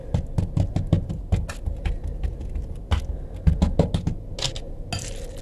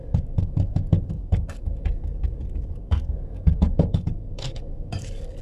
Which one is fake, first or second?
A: second